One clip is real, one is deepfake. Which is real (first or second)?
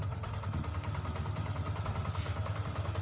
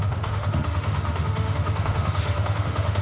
first